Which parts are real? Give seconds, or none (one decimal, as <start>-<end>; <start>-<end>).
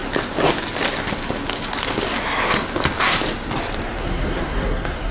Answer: 0.0-4.0